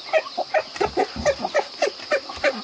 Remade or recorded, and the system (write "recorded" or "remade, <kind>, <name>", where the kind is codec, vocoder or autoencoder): recorded